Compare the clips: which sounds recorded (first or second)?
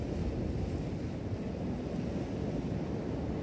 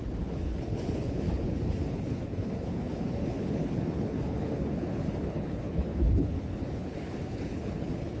first